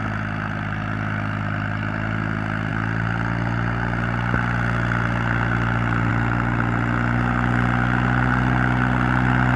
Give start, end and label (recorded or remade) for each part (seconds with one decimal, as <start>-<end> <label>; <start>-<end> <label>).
0.0-9.6 recorded